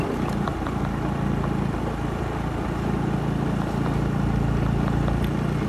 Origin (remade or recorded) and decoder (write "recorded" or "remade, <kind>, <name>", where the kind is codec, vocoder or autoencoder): recorded